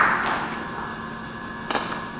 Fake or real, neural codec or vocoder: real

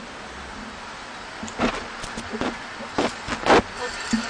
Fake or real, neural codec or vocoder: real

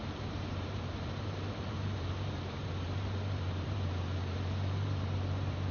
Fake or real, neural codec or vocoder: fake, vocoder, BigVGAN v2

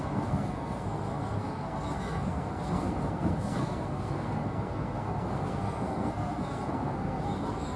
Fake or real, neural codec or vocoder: fake, codec, SNAC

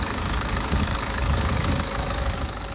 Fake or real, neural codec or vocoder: fake, codec, DAC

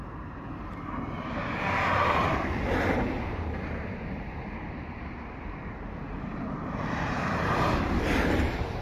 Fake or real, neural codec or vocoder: fake, vocoder, BigVGAN v2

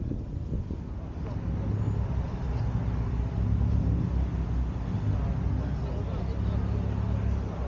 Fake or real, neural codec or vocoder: real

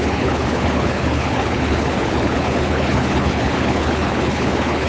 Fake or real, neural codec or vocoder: fake, codec, HILCodec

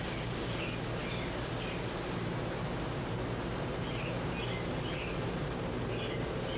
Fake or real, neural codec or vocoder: real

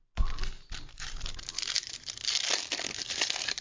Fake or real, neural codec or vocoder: real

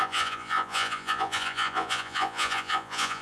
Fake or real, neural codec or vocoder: fake, vocoder, Vocos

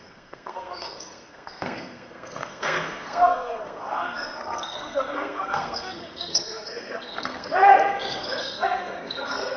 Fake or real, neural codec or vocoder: fake, codec, SNAC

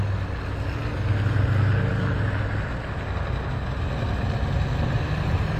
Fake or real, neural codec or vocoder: real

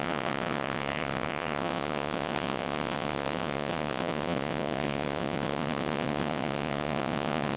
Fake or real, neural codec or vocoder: fake, vocoder, WaveNeXt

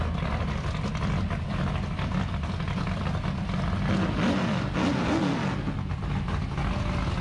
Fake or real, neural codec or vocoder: real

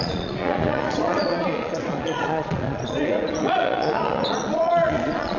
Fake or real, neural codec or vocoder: fake, vocoder, Vocos